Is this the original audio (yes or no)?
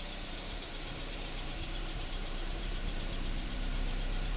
no